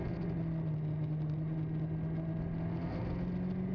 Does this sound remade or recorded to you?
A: recorded